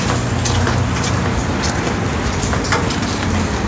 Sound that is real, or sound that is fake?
real